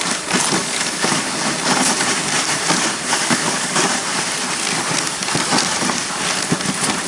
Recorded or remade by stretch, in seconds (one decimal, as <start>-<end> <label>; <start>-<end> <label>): 0.0-0.6 recorded; 0.6-1.2 remade; 1.2-3.1 recorded; 3.1-3.8 remade; 3.8-7.1 recorded